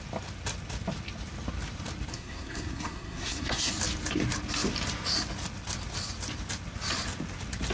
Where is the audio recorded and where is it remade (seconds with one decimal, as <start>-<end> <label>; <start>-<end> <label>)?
0.0-2.1 recorded; 2.1-3.7 remade; 3.7-7.7 recorded

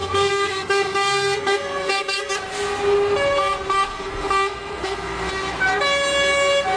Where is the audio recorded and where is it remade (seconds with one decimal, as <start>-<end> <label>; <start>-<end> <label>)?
0.0-2.3 remade; 2.3-3.9 recorded; 3.9-5.3 remade; 5.3-6.8 recorded

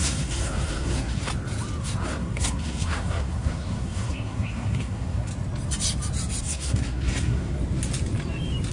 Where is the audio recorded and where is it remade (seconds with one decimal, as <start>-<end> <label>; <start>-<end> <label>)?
0.0-1.3 remade; 1.3-1.8 recorded; 1.8-5.3 remade; 5.3-6.4 recorded; 6.4-7.6 remade; 7.6-8.7 recorded

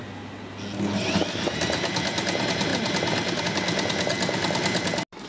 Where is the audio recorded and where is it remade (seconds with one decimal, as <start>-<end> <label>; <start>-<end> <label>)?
0.0-5.3 recorded

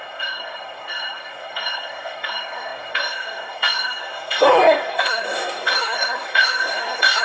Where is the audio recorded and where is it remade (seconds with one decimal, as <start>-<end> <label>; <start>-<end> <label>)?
0.0-7.2 remade